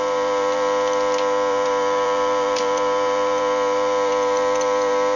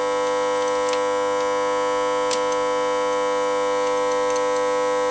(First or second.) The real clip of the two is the second